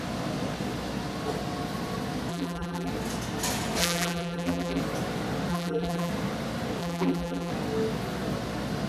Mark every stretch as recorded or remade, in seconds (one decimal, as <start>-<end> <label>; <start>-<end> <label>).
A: 0.0-2.3 recorded; 2.3-2.9 remade; 2.9-3.8 recorded; 3.8-4.8 remade; 4.8-5.5 recorded; 5.5-6.1 remade; 6.1-6.8 recorded; 6.8-7.5 remade; 7.5-8.9 recorded